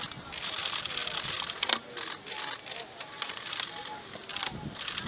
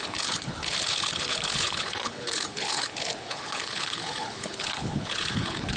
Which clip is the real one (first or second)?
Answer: first